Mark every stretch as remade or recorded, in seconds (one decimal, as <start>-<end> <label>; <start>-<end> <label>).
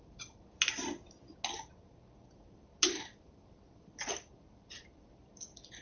0.0-5.8 recorded